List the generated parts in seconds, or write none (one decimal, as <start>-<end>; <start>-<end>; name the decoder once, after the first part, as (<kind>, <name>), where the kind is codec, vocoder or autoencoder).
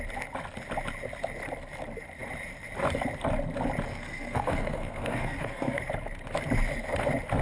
3.9-5.8 (codec, SNAC)